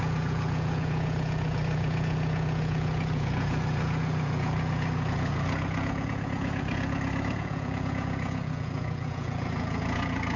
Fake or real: fake